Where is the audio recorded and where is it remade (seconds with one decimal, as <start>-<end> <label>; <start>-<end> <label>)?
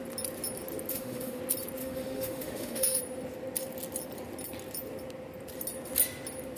0.0-0.9 recorded; 0.9-1.4 remade; 1.4-1.8 recorded; 1.8-3.0 remade; 3.0-6.6 recorded